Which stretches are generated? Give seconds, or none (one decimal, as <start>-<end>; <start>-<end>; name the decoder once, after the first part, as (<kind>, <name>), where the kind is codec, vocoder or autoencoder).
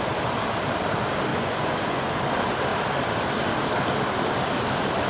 1.3-2.1 (vocoder, Vocos)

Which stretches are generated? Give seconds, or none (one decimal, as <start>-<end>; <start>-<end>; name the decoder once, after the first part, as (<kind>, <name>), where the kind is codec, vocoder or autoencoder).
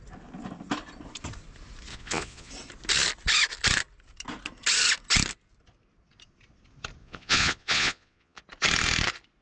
1.9-2.5 (vocoder, Vocos); 7.0-8.4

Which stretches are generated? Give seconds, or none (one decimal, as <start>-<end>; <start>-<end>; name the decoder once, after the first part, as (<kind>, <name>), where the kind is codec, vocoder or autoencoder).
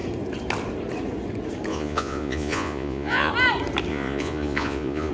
1.7-3.3 (vocoder, Vocos); 3.9-5.1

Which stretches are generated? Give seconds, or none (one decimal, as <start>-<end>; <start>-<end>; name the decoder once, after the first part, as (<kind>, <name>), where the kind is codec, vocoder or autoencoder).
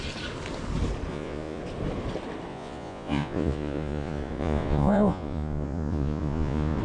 1.1-1.6 (vocoder, Vocos); 2.5-6.8